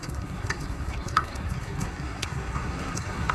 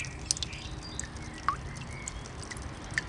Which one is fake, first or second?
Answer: first